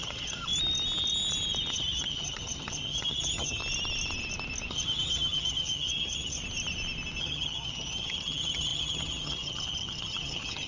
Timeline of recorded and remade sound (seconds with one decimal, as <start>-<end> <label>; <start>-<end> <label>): 0.0-0.5 remade; 0.5-1.7 recorded; 1.7-3.6 remade; 3.6-4.7 recorded; 4.7-6.4 remade; 6.4-7.2 recorded; 7.2-10.7 remade

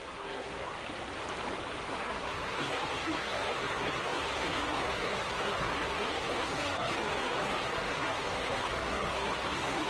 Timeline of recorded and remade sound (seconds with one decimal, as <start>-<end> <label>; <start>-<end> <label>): 0.0-0.7 remade; 0.7-1.9 recorded; 1.9-9.9 remade

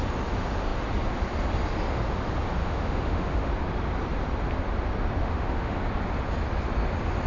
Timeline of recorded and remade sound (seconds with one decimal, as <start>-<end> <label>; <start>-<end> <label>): 0.0-2.6 recorded; 2.6-3.5 remade; 3.5-5.2 recorded; 5.2-5.8 remade; 5.8-7.3 recorded

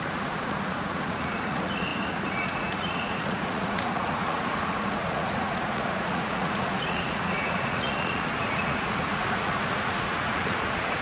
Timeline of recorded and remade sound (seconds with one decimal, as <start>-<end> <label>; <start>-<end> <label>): 0.0-11.0 remade

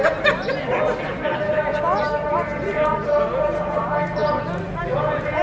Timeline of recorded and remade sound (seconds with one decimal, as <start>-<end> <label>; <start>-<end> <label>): 0.0-5.4 recorded

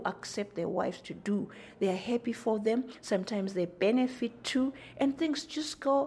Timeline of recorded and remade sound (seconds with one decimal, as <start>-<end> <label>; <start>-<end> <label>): 0.0-6.1 recorded

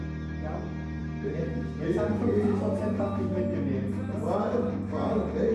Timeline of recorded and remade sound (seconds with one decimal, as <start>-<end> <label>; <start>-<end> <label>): 0.0-5.5 recorded